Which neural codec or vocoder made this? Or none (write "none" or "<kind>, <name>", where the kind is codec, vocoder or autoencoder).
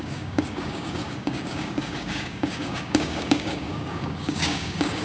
codec, DAC